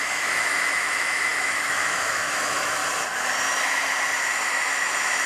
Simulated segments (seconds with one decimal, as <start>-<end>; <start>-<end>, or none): 0.0-2.8; 4.5-5.3